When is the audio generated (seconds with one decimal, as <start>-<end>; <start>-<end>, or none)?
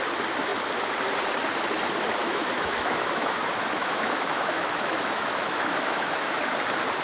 2.2-6.4